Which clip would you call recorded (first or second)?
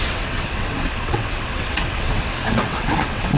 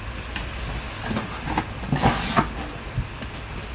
second